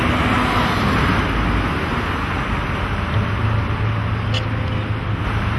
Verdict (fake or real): real